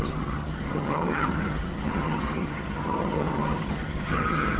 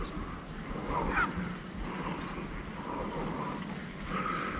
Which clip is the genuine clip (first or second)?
second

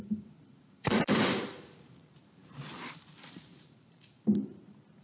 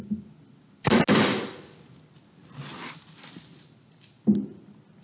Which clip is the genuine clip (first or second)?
second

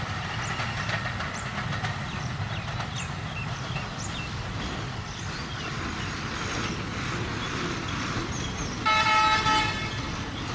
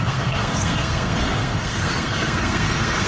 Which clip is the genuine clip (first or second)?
first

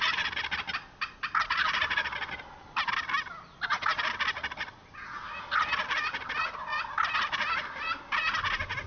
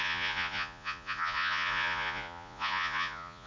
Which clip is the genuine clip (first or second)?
first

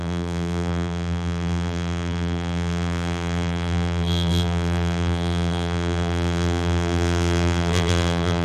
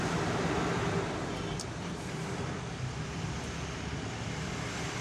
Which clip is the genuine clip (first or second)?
second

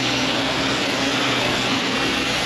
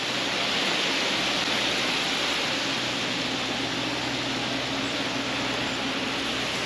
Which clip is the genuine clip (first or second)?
second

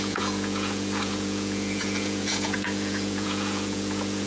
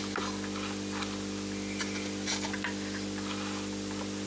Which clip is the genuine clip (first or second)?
second